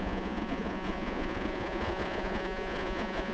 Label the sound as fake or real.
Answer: fake